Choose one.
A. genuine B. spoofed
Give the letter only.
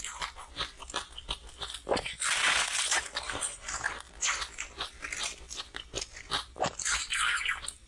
A